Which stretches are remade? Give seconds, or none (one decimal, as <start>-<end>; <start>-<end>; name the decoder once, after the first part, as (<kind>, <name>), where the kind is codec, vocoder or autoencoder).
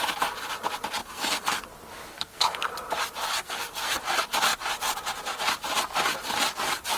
1.0-1.7 (codec, SNAC); 2.1-2.7; 3.4-4.0